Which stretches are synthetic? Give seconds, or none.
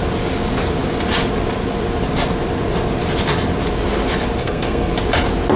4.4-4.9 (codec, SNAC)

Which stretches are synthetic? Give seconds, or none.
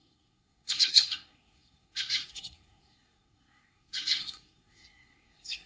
0.0-5.7 (codec, SNAC)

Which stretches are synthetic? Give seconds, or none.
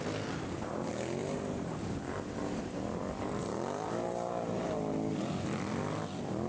none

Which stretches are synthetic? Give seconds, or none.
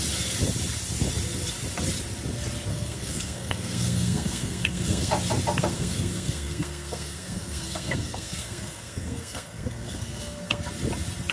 2.7-5.1 (codec, SNAC); 5.6-10.6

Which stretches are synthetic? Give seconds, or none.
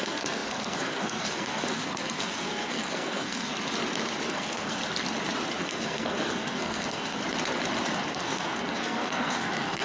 0.0-3.5 (codec, SNAC); 4.3-4.8; 5.6-7.2; 8.1-9.8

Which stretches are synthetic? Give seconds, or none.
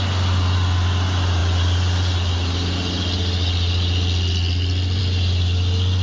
none